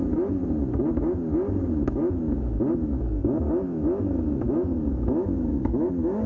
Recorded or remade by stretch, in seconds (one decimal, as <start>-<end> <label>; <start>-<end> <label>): 0.0-0.4 remade; 0.4-1.7 recorded; 1.7-6.3 remade